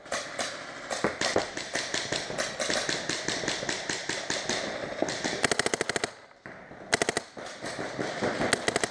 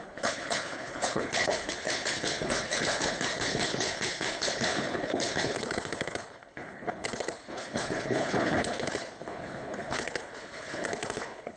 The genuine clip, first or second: first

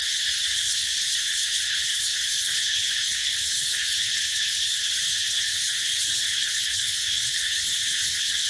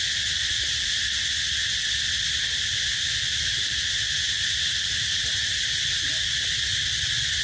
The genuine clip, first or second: second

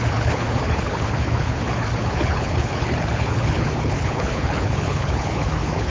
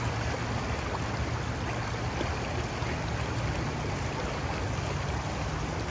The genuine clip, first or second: second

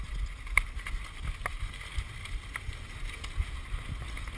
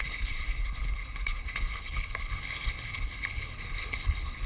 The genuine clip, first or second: first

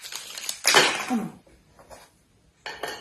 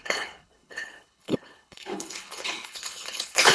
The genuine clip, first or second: first